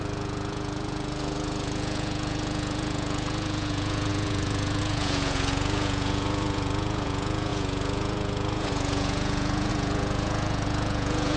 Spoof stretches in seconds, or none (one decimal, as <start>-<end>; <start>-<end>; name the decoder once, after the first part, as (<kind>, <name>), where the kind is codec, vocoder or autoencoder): 0.0-11.4 (vocoder, Vocos)